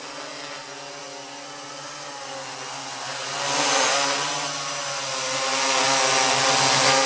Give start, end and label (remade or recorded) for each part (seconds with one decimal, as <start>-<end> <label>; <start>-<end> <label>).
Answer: 0.0-7.1 recorded